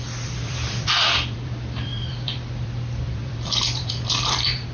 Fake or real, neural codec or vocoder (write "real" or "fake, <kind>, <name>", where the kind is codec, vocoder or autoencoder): fake, vocoder, BigVGAN v2